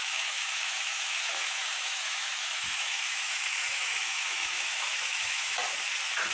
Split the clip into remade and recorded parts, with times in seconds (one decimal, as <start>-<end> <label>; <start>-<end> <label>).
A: 0.0-5.6 remade; 5.6-6.3 recorded